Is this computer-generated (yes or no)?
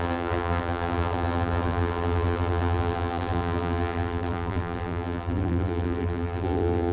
yes